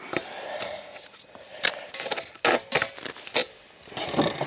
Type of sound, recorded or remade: recorded